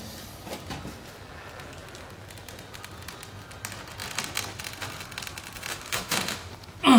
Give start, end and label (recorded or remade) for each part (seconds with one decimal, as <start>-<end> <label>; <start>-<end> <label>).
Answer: 0.0-5.7 recorded; 5.7-6.5 remade; 6.5-7.0 recorded